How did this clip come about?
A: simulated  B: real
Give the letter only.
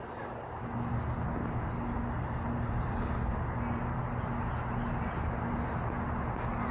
B